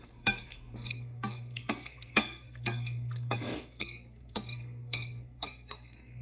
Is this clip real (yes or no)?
no